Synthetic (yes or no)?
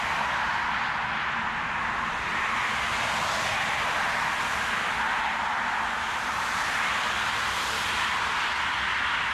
no